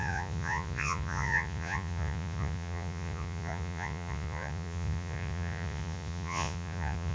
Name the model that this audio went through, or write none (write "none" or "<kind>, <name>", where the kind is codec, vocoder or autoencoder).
vocoder, Vocos